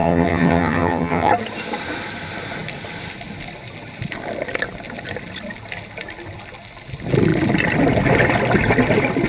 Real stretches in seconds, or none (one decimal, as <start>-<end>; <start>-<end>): 1.3-9.3